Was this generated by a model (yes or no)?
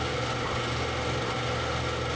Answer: no